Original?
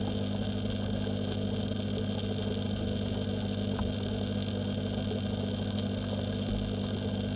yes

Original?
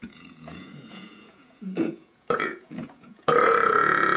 no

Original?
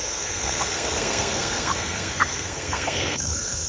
no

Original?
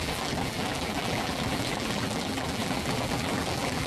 no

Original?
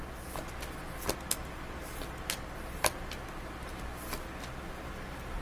yes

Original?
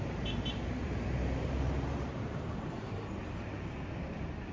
no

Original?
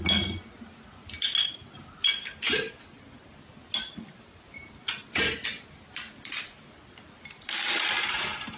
yes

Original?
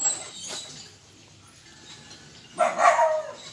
yes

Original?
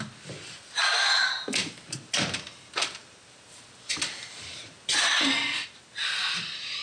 yes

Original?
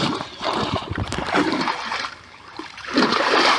no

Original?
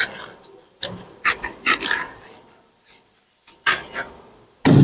yes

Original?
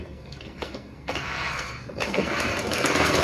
no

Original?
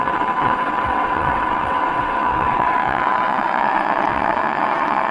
no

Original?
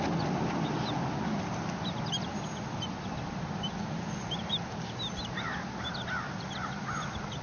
yes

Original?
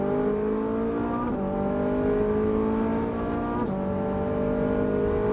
yes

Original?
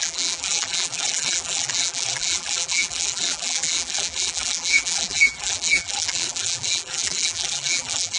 no